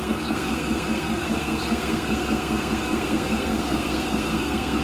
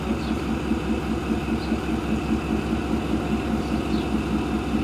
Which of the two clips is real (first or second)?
second